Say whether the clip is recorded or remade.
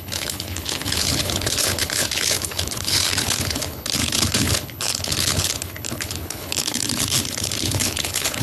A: remade